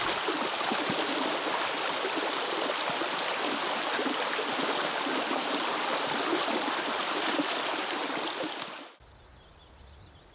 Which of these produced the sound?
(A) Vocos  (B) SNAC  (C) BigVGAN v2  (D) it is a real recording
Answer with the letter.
D